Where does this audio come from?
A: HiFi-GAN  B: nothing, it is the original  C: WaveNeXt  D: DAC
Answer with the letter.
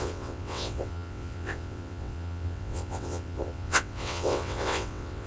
C